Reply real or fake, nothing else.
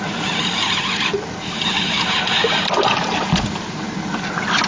real